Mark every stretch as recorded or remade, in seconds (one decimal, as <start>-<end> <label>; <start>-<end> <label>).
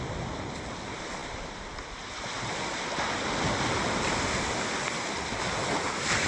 0.0-6.3 recorded